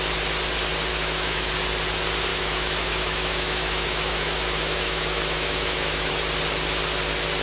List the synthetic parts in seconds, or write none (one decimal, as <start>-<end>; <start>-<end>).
0.9-1.5; 2.3-6.1